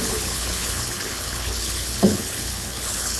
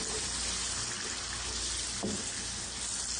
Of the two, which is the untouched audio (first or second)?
second